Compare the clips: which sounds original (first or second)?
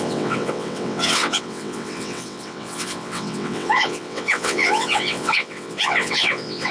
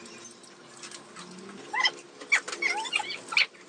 second